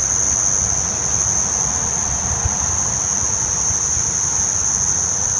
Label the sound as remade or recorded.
recorded